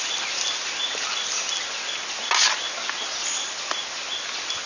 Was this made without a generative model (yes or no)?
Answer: yes